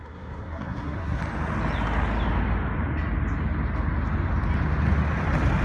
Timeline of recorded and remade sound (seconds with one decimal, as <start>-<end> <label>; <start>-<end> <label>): 0.0-1.2 remade; 1.2-5.6 recorded